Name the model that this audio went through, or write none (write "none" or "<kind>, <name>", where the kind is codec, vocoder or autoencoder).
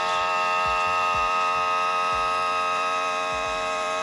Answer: vocoder, BigVGAN v2